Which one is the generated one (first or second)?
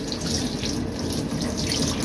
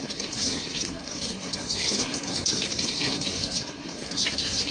second